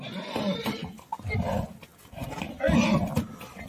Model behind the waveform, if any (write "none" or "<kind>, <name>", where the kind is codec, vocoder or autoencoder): none